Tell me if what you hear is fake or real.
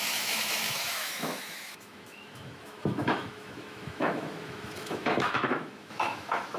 fake